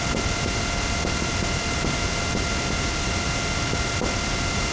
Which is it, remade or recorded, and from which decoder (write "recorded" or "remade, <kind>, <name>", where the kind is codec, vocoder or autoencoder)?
recorded